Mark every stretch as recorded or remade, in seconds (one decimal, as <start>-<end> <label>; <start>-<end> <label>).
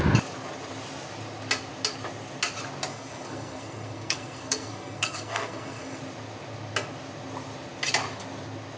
0.0-2.9 recorded; 2.9-6.0 remade; 6.0-8.8 recorded